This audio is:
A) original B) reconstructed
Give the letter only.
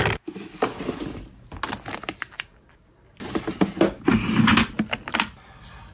A